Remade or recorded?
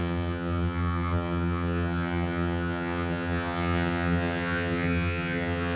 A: remade